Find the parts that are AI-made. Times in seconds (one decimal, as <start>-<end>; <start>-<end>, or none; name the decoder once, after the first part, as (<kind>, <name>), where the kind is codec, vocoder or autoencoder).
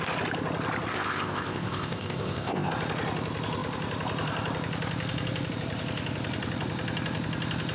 0.9-2.7 (codec, ZipCodec)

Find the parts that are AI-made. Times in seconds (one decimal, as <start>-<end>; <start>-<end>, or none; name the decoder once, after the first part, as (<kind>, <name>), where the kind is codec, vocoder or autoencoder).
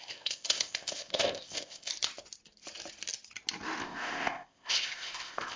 0.0-1.9 (codec, ZipCodec); 3.8-5.6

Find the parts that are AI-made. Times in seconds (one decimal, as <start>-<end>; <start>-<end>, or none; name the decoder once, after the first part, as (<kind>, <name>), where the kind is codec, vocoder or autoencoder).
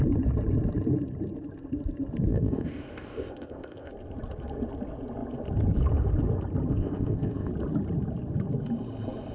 2.3-3.9 (codec, ZipCodec); 6.7-7.5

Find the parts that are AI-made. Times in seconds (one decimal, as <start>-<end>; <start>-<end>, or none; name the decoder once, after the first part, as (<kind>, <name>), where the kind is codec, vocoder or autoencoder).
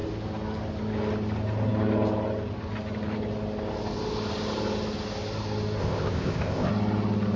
5.8-6.7 (codec, ZipCodec)